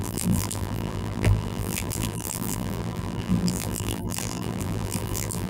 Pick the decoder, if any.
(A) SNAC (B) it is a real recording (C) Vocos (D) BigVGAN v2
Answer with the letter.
D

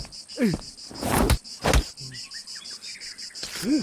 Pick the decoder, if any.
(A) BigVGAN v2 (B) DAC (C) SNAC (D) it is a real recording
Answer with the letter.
D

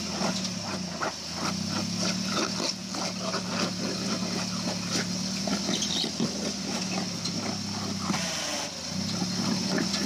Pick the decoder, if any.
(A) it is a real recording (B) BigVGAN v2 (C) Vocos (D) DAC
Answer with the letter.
A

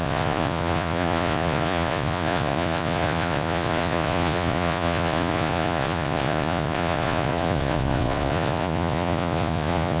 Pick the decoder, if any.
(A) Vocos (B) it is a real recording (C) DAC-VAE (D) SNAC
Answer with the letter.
A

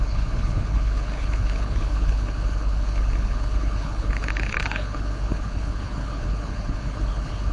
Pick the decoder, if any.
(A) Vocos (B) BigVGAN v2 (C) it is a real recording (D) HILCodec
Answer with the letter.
D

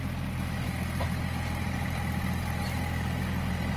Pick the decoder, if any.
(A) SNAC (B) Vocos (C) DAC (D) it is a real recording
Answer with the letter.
D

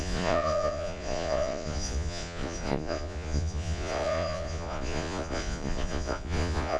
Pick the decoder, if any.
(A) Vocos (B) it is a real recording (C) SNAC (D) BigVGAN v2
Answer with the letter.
A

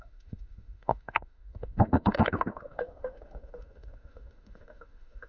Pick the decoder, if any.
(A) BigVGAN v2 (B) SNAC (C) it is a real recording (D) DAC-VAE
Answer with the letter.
D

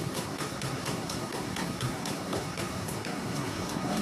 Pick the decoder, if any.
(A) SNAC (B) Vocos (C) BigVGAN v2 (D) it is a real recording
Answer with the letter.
A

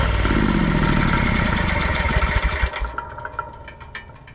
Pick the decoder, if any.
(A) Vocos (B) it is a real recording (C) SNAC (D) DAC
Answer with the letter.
B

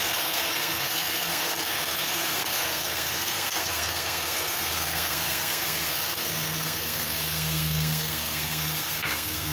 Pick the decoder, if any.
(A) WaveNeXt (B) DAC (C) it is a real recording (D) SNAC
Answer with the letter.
D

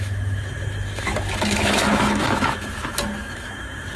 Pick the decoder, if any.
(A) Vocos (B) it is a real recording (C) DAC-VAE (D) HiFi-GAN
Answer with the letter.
C